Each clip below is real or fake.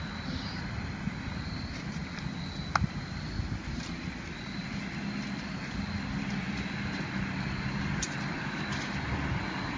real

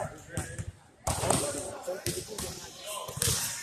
real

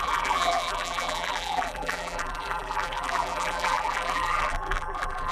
fake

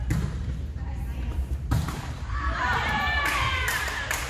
fake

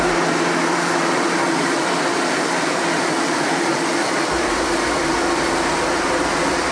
fake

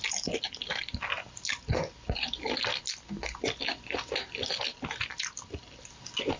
real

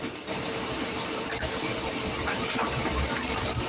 fake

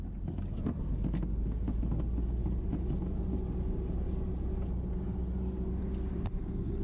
real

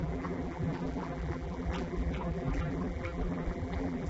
fake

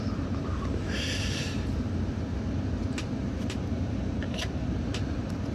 fake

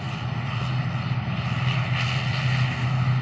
real